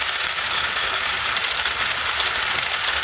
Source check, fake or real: fake